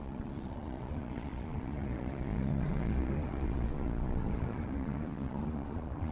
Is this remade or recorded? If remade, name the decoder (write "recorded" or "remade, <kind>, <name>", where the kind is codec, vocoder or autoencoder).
remade, vocoder, Vocos